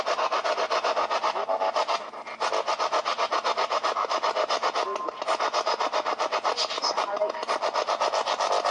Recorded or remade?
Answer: recorded